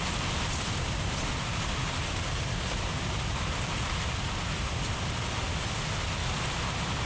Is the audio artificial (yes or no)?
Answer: no